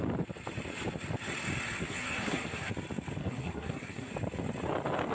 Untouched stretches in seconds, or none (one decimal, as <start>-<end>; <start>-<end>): 0.0-1.8; 2.7-3.2; 4.1-5.1